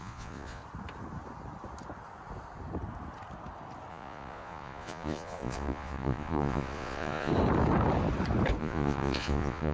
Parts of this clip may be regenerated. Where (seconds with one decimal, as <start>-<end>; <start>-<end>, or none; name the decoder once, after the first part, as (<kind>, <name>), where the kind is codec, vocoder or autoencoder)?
0.0-0.6 (vocoder, Vocos); 3.9-7.3; 8.6-9.7